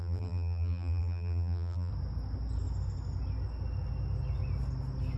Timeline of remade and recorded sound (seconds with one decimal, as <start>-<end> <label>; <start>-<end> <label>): 0.0-1.9 remade; 1.9-5.2 recorded